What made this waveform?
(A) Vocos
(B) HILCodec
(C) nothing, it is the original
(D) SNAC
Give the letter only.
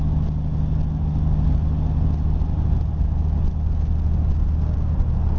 C